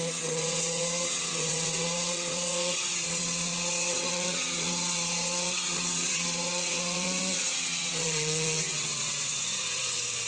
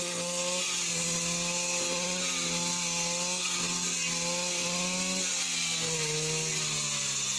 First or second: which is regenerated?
first